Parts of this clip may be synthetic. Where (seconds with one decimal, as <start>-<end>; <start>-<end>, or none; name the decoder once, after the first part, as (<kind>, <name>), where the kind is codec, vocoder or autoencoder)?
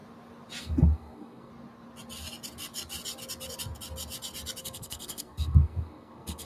0.6-1.5 (codec, SNAC); 4.6-6.4